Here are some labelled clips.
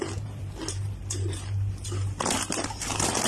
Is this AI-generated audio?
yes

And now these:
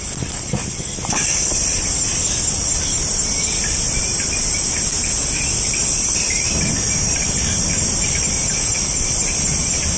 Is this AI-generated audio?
no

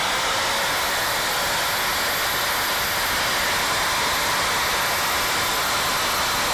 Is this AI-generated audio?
no